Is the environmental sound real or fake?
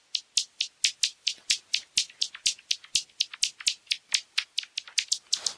real